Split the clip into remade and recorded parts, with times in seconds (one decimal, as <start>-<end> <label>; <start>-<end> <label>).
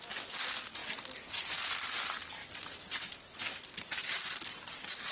0.0-5.1 recorded